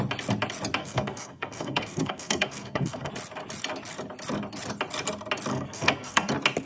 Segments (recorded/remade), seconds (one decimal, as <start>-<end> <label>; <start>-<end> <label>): 0.0-0.8 recorded; 0.8-3.1 remade; 3.1-5.5 recorded; 5.5-6.3 remade; 6.3-6.7 recorded